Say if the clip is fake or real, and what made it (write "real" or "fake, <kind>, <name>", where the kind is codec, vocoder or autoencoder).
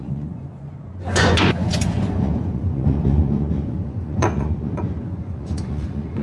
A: fake, vocoder, Vocos